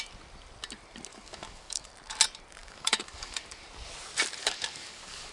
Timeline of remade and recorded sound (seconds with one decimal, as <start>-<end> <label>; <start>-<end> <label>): 0.0-1.1 recorded; 1.1-1.9 remade; 1.9-2.6 recorded; 2.6-3.6 remade; 3.6-4.4 recorded; 4.4-5.3 remade